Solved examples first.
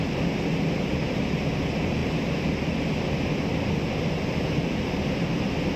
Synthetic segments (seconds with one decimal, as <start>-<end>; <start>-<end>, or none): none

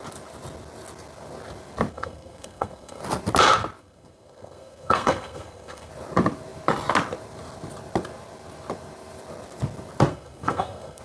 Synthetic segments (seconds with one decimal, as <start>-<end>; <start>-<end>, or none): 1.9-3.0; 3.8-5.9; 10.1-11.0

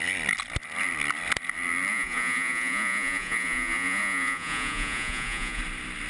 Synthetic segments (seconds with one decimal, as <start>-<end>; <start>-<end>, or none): 1.9-5.6